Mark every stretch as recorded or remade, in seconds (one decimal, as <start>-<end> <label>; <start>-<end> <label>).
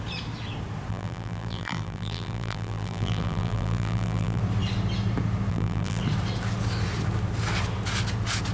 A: 0.0-0.9 recorded; 0.9-4.4 remade; 4.4-5.5 recorded; 5.5-6.0 remade; 6.0-8.5 recorded